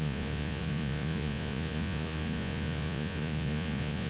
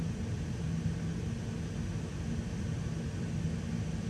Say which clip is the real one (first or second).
second